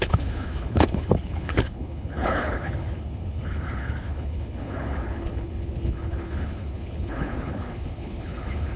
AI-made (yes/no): yes